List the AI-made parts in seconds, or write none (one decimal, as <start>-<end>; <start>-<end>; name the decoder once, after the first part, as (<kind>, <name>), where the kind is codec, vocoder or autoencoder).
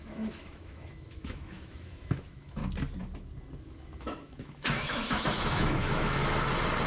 0.0-2.6 (autoencoder, DAC-VAE); 3.6-6.2